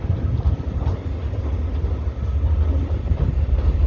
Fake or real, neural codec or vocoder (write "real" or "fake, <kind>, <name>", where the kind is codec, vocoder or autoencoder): real